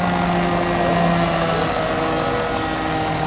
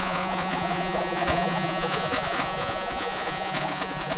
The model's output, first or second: second